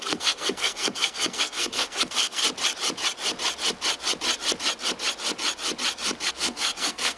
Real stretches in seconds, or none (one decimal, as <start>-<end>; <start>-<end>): 2.4-6.3